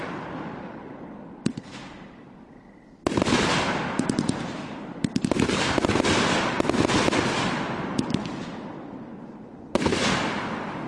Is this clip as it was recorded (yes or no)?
yes